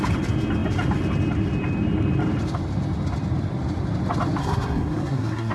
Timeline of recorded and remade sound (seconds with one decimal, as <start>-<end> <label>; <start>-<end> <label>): 0.0-4.4 recorded; 4.4-5.5 remade